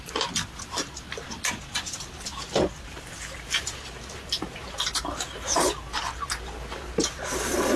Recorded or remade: recorded